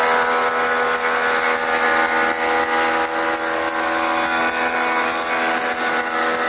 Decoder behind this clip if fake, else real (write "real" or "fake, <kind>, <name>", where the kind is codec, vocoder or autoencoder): real